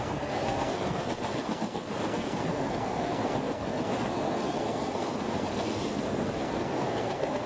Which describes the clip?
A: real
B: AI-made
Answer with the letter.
B